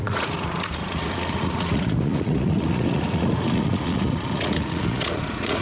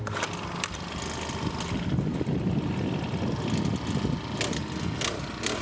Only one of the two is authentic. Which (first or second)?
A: second